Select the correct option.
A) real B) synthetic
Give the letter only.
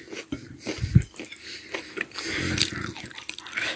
A